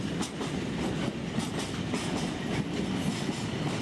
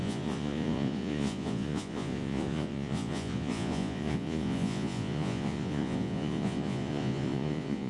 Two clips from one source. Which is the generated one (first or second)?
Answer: second